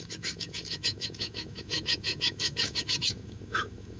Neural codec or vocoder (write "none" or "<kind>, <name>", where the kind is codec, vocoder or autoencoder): autoencoder, DAC-VAE